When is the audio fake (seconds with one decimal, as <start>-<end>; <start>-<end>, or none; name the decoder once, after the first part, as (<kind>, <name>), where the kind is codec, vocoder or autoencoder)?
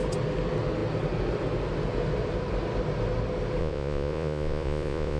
3.6-5.2 (vocoder, Vocos)